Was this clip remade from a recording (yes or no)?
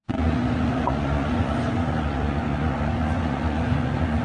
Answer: yes